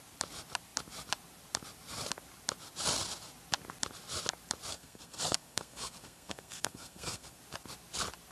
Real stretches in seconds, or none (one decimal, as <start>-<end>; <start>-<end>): 0.0-4.7; 7.4-8.3